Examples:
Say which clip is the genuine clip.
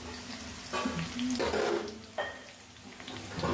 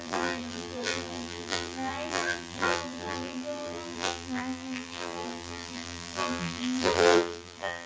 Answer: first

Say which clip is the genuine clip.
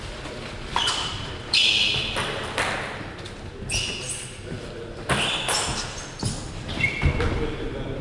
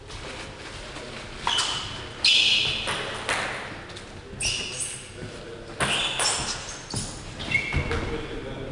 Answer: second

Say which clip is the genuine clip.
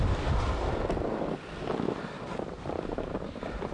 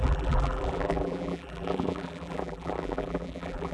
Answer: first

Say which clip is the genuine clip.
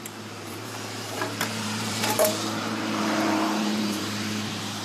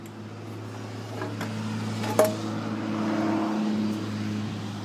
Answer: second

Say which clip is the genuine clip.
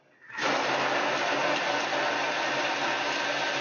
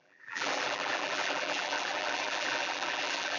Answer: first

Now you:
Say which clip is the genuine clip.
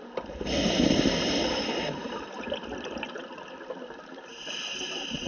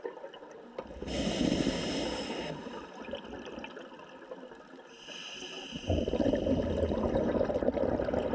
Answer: second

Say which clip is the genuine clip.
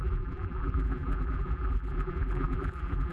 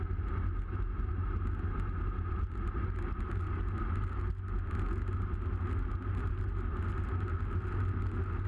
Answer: second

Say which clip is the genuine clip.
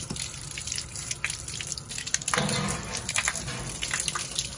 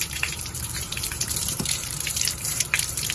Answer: first